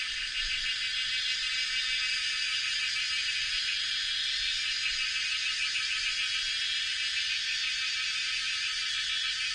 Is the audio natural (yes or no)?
yes